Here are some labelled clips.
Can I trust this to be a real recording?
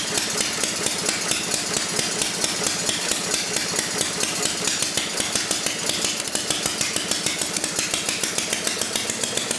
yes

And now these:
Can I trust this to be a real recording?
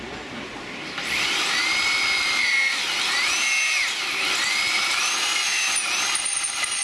yes